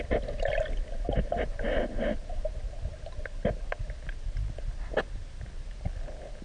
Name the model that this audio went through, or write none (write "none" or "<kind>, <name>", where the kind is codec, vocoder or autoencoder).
none